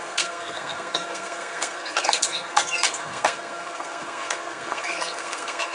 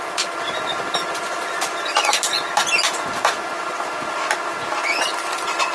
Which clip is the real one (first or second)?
second